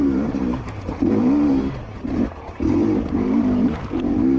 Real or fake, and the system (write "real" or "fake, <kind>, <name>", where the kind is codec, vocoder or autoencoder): fake, vocoder, BigVGAN v2